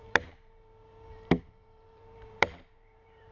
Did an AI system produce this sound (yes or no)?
yes